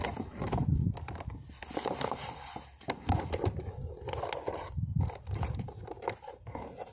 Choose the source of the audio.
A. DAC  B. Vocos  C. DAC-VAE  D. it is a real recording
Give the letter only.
D